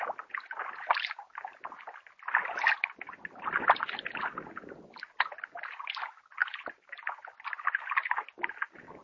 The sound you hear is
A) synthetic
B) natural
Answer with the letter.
B